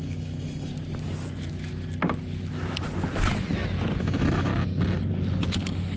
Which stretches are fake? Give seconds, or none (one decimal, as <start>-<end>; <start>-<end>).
0.0-0.7; 4.0-4.5